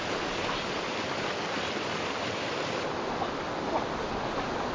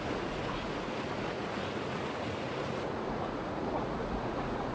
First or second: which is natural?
first